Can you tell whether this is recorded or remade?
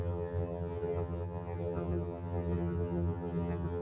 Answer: remade